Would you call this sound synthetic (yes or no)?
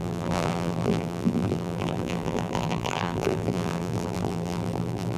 yes